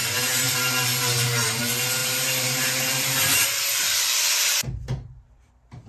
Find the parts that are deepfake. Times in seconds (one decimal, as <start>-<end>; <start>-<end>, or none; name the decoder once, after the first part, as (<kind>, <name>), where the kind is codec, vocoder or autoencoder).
2.0-5.5 (vocoder, BigVGAN v2)